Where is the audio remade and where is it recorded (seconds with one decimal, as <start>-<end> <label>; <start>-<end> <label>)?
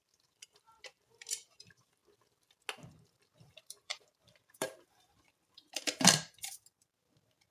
0.0-2.0 remade; 2.0-2.9 recorded; 2.9-7.5 remade